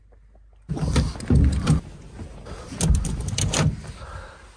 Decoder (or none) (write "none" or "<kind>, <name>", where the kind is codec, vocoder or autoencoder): none